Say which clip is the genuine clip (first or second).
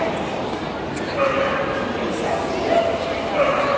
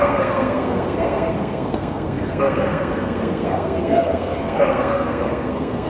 first